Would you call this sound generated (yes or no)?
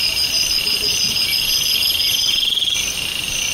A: no